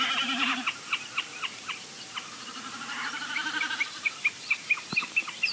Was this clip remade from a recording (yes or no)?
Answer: yes